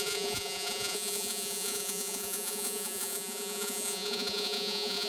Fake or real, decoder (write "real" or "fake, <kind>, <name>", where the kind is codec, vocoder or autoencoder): fake, vocoder, Vocos